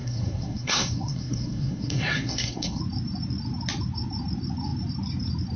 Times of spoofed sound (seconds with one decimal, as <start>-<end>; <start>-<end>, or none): 0.0-2.8